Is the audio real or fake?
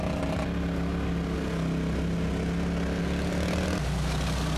real